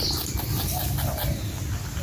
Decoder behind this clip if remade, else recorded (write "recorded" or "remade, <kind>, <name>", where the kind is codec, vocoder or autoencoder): recorded